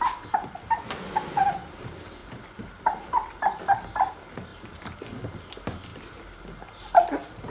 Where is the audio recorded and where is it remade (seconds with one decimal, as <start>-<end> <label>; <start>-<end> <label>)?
0.0-2.2 recorded; 2.2-4.1 remade; 4.1-7.5 recorded

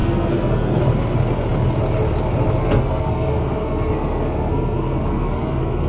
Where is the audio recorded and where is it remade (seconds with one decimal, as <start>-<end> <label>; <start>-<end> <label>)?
0.0-0.8 remade; 0.8-2.6 recorded; 2.6-5.9 remade

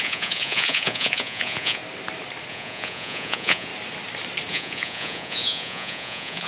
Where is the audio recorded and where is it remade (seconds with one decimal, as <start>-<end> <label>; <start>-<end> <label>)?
0.0-1.8 remade; 1.8-2.5 recorded; 2.5-3.7 remade; 3.7-4.5 recorded; 4.5-6.5 remade

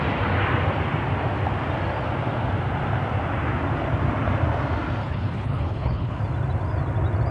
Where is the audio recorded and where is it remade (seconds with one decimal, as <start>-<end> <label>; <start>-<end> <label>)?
0.0-5.0 recorded; 5.0-6.2 remade; 6.2-7.3 recorded

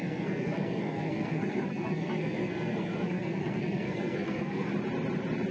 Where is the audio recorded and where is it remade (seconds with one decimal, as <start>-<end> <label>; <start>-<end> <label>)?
0.0-4.7 remade; 4.7-5.5 recorded